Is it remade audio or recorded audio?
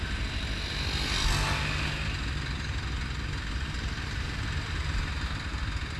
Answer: recorded